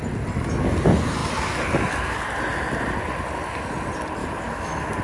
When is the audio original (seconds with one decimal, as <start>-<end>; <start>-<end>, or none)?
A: 0.0-4.2